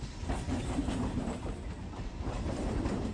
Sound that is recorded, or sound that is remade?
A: remade